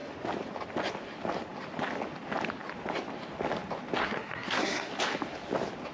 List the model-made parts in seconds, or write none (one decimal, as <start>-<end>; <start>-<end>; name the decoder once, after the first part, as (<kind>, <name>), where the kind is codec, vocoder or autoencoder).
4.0-4.9 (codec, SNAC)